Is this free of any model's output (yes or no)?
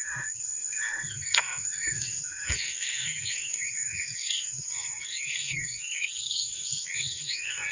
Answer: no